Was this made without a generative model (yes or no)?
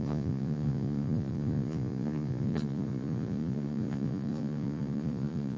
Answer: no